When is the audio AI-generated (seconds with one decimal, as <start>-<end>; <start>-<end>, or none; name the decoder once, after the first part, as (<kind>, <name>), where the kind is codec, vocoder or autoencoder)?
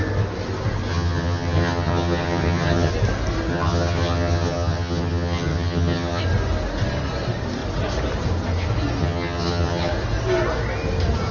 0.9-2.9 (vocoder, HiFi-GAN); 3.5-6.2; 9.0-9.9